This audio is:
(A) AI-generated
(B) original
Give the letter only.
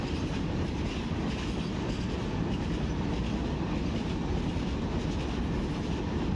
B